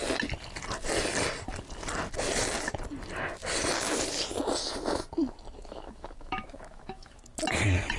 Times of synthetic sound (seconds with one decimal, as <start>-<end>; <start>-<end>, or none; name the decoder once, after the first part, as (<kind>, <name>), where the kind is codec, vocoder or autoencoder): 5.6-7.2 (autoencoder, DAC-VAE)

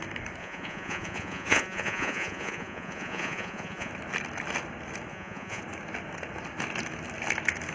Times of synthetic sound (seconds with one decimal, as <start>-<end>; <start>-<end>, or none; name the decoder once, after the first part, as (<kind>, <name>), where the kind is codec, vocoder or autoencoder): 0.4-3.9 (vocoder, Vocos); 5.1-5.6

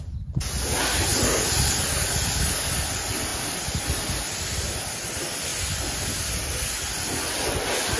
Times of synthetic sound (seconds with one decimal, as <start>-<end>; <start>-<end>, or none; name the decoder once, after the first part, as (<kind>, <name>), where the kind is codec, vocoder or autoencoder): none

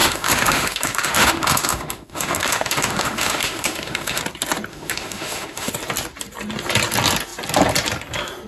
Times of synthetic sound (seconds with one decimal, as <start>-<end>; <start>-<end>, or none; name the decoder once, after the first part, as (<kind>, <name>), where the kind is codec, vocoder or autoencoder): 0.0-4.2 (autoencoder, DAC-VAE); 4.7-5.7

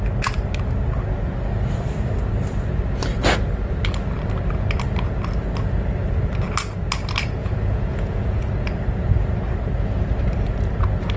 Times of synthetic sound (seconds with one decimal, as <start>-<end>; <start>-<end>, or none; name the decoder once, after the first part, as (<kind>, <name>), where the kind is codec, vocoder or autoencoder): 7.4-8.4 (vocoder, Vocos)

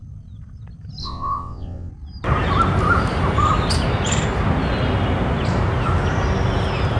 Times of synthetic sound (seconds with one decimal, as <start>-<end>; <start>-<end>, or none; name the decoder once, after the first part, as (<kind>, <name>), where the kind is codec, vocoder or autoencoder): 1.0-1.9 (vocoder, WaveNeXt)